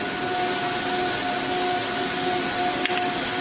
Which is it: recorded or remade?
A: recorded